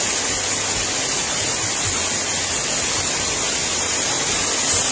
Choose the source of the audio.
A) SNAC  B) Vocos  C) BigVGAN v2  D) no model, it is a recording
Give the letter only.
D